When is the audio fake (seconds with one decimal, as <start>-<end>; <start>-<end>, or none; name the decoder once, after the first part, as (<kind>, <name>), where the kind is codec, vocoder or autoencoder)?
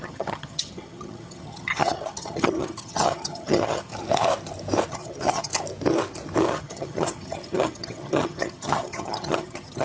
0.0-3.9 (vocoder, HiFi-GAN); 4.9-5.5; 6.5-9.8